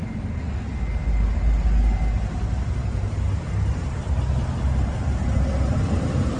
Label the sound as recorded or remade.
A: recorded